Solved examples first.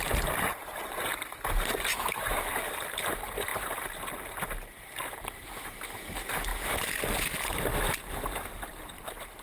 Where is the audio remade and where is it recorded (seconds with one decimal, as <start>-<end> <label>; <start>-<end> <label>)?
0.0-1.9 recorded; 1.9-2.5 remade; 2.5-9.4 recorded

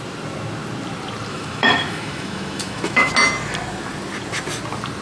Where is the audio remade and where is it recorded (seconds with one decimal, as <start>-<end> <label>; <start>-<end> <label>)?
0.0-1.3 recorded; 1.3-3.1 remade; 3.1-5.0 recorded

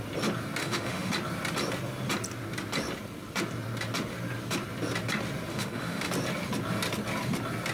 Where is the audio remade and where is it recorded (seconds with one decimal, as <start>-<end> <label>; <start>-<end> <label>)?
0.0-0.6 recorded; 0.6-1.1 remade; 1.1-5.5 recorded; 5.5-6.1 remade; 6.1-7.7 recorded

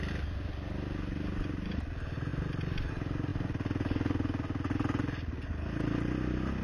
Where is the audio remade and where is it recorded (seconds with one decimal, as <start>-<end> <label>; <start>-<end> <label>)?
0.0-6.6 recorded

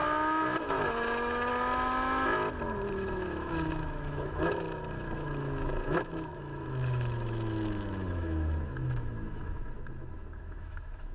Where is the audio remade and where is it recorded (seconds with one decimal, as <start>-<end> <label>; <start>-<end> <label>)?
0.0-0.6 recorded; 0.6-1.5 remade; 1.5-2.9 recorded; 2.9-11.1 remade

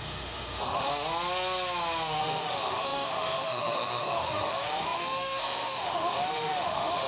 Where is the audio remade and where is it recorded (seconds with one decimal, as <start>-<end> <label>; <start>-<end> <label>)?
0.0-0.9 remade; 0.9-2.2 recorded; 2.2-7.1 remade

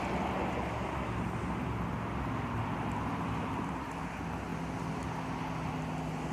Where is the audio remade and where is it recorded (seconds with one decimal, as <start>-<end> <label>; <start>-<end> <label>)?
0.0-6.3 recorded